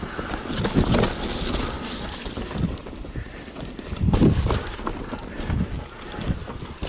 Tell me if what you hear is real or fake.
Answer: real